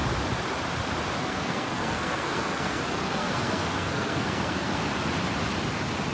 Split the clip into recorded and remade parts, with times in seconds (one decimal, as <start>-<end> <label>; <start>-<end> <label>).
0.0-1.2 recorded; 1.2-4.8 remade; 4.8-6.1 recorded